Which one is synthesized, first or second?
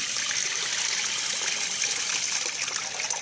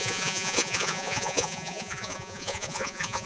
second